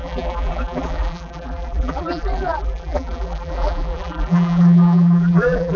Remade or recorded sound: remade